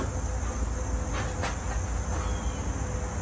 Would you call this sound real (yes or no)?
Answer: yes